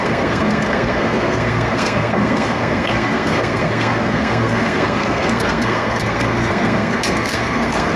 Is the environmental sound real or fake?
fake